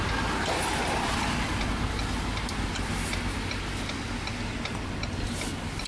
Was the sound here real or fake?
real